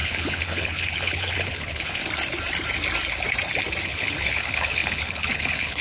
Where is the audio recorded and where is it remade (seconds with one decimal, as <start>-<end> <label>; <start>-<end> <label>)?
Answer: 0.0-2.0 remade; 2.0-3.8 recorded; 3.8-5.8 remade